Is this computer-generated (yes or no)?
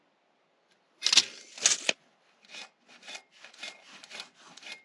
no